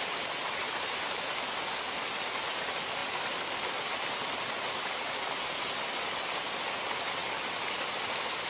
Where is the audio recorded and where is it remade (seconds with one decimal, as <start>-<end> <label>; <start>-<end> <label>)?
0.0-8.5 recorded